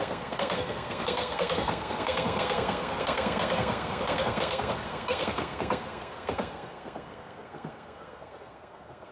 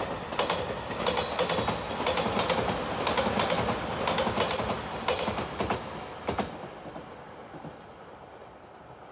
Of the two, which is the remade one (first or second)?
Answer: first